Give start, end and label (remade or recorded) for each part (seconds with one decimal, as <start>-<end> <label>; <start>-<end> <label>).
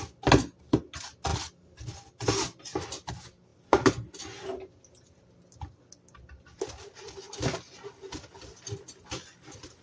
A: 0.0-9.8 recorded